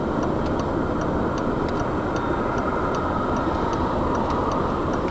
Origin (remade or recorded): recorded